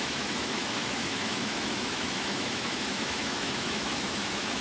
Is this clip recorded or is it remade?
remade